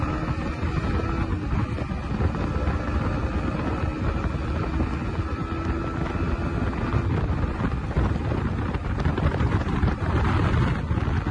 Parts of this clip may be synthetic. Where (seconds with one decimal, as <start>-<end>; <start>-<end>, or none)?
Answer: 8.8-10.3